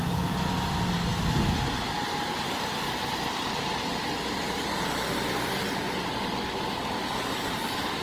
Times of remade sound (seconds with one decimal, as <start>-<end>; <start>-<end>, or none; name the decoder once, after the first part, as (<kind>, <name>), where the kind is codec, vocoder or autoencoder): none